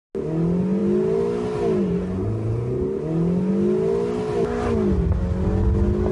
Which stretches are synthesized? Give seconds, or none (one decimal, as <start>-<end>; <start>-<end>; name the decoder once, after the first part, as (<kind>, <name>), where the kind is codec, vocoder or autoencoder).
none

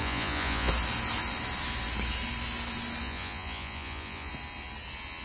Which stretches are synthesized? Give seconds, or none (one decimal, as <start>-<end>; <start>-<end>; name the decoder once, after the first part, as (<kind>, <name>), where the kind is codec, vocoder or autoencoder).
0.0-0.7 (vocoder, Vocos); 3.0-4.3

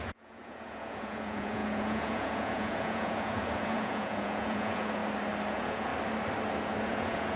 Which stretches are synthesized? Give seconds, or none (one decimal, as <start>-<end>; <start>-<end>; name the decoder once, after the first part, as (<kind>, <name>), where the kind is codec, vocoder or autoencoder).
0.0-5.0 (vocoder, Vocos); 5.5-5.9; 6.8-7.4

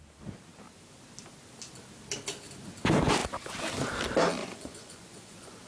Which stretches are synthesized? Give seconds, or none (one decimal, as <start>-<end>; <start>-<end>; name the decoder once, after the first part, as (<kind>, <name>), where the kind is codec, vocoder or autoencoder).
4.4-5.7 (vocoder, Vocos)

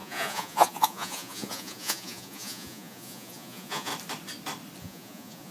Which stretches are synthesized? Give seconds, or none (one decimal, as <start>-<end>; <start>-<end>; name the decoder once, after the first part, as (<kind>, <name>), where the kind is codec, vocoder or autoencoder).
0.0-3.9 (vocoder, Vocos); 4.8-5.5

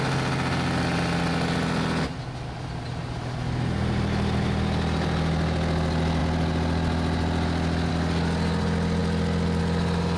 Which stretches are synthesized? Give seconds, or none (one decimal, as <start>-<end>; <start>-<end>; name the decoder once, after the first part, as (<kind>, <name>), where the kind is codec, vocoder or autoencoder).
none